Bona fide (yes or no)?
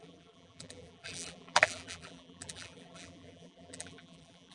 no